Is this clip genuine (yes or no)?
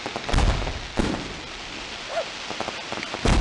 yes